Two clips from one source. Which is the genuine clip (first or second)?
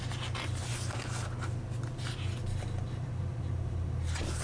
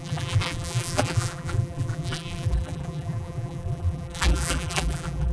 first